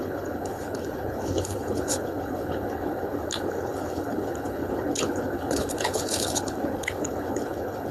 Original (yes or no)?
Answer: no